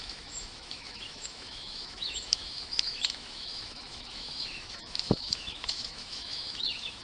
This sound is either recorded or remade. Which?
remade